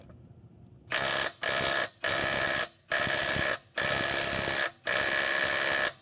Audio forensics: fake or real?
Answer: real